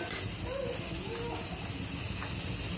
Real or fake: real